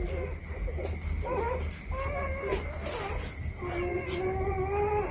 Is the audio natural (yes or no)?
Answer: yes